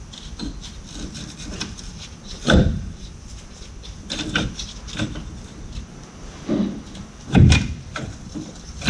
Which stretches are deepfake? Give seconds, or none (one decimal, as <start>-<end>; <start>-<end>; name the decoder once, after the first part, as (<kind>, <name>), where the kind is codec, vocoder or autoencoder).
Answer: 1.5-3.7 (vocoder, BigVGAN v2)